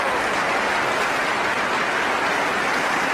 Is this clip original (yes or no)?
yes